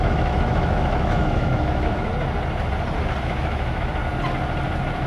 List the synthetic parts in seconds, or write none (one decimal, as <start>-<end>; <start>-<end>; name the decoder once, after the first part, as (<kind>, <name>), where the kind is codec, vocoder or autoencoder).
0.0-2.1 (autoencoder, DAC-VAE); 3.2-4.0